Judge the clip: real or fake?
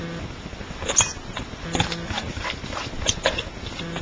real